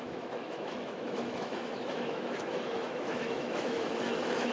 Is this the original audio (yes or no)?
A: no